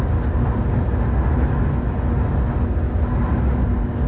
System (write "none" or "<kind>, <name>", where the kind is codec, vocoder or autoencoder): none